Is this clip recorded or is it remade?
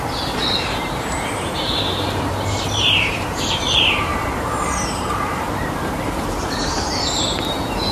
remade